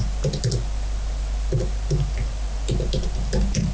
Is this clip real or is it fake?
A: real